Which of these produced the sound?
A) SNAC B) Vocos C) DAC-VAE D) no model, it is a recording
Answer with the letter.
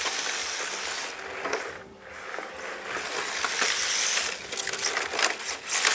D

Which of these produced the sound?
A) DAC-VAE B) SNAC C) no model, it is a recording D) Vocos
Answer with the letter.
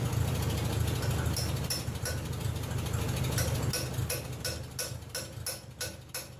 C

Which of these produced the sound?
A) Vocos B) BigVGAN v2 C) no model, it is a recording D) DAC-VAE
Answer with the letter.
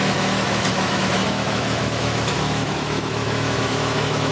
D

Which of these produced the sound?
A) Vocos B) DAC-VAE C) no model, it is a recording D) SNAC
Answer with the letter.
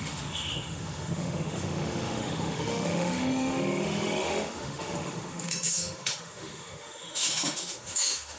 B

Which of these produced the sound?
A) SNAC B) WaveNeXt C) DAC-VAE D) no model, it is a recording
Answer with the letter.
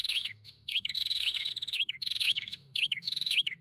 C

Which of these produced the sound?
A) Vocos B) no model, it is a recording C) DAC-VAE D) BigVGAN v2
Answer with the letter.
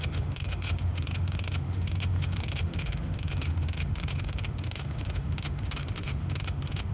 C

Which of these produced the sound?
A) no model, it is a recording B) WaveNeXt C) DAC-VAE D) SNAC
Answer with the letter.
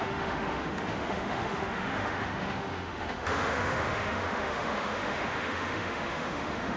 C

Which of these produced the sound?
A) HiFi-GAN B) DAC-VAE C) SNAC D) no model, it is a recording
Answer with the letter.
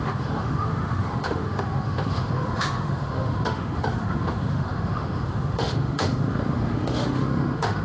B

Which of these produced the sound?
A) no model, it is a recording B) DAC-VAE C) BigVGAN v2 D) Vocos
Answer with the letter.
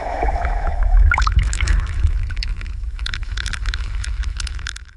B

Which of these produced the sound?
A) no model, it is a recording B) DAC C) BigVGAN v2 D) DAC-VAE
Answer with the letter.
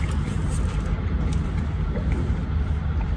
A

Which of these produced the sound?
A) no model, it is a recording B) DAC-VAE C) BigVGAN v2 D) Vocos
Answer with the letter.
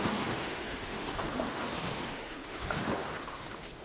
B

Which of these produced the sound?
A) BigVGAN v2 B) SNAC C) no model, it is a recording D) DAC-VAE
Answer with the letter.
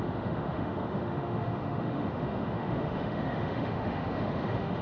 D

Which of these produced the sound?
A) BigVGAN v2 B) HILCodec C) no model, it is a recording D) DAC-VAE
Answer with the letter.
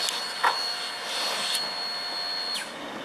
C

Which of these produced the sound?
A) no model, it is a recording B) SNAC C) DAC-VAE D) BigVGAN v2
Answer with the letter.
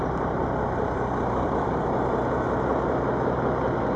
A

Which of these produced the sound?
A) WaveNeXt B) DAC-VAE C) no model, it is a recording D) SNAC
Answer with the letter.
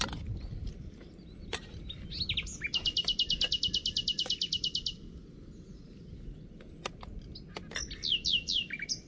C